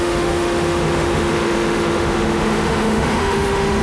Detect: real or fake fake